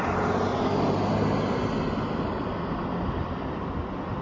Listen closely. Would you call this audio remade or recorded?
recorded